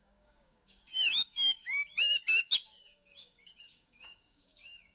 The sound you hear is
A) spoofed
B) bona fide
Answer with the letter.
A